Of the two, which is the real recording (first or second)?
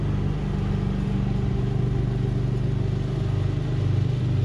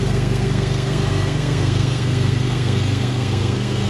first